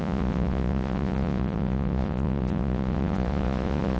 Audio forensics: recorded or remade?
remade